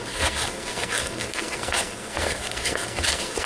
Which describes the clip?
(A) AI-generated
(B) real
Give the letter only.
A